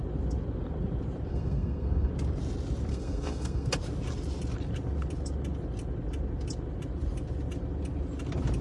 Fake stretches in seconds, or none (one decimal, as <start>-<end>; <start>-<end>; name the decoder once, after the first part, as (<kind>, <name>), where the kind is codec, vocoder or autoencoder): 1.3-2.1 (codec, SNAC); 2.9-3.7